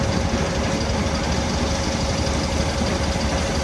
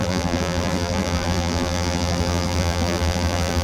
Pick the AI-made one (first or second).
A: second